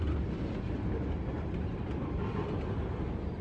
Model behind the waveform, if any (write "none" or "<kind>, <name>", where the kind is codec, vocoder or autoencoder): none